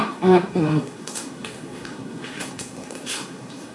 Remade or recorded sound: remade